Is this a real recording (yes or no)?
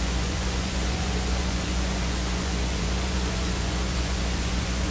no